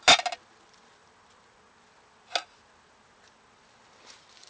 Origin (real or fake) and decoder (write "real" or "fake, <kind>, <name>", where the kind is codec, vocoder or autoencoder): real